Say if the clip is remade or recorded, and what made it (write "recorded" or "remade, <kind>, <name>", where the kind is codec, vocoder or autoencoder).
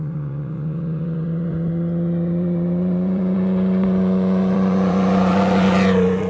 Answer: remade, vocoder, Vocos